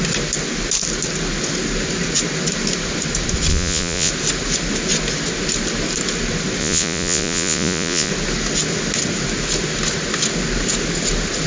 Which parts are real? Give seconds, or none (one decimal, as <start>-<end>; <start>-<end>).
0.0-3.5; 4.1-6.6; 8.1-11.5